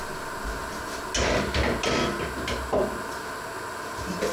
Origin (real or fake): real